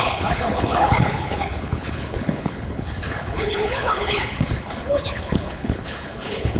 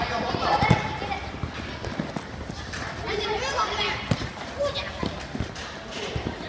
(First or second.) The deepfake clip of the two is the first